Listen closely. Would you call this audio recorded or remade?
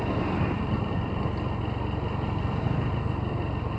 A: recorded